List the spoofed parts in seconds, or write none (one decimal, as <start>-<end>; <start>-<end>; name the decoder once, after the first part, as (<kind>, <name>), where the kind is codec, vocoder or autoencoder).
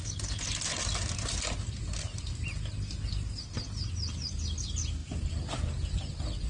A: none